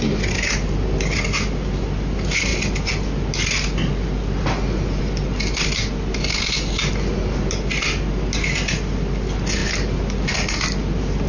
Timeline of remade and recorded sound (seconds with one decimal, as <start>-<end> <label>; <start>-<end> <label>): 0.0-11.3 recorded